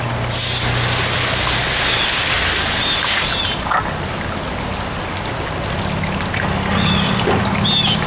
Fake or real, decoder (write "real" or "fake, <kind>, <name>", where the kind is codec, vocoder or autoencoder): real